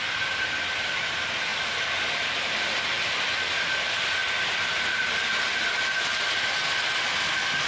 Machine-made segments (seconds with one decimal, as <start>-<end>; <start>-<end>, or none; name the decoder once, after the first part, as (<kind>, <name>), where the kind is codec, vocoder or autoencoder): none